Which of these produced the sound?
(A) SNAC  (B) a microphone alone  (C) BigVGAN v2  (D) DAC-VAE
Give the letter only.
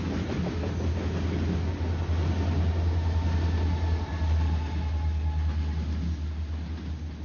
B